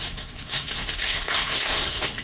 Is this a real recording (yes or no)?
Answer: no